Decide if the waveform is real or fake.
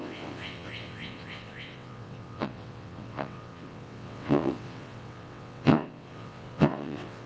fake